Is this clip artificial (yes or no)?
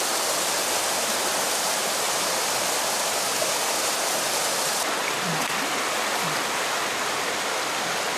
no